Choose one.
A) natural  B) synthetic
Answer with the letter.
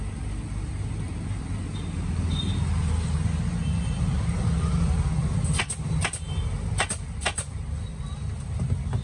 A